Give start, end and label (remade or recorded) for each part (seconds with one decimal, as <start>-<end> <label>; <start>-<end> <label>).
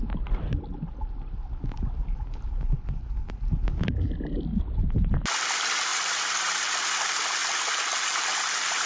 0.0-5.9 recorded; 5.9-6.6 remade; 6.6-8.9 recorded